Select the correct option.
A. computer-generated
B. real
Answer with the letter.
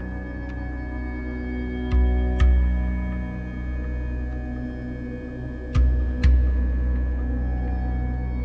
B